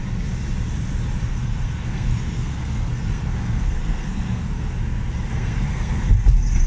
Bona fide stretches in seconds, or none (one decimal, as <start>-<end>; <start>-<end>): 0.0-1.3; 4.7-5.3; 6.1-6.7